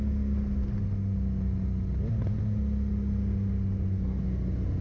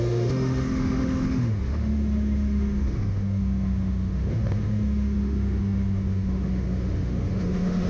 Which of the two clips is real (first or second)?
first